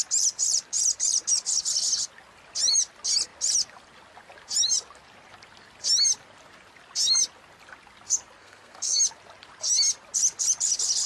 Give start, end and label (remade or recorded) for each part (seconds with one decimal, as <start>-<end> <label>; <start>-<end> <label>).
0.0-8.4 recorded; 8.4-9.0 remade; 9.0-11.1 recorded